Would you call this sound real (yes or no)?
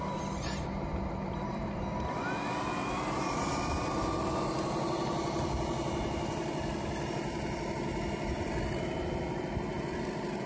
yes